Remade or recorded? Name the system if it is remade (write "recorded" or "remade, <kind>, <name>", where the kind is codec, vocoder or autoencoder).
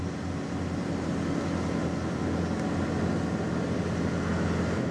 recorded